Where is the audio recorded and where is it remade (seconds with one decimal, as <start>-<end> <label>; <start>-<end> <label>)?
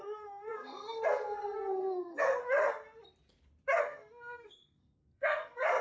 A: 0.0-2.4 remade; 2.4-3.8 recorded; 3.8-5.8 remade